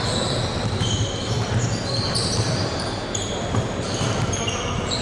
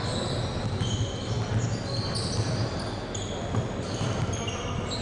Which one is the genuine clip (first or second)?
second